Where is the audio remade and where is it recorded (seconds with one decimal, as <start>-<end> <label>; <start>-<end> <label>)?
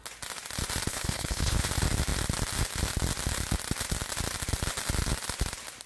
0.0-0.9 recorded; 0.9-1.7 remade; 1.7-5.9 recorded